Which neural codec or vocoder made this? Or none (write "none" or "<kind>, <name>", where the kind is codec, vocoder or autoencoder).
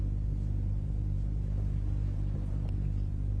vocoder, BigVGAN v2